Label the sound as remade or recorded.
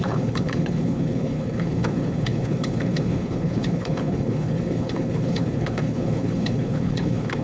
remade